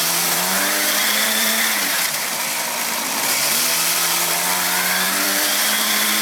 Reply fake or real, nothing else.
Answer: fake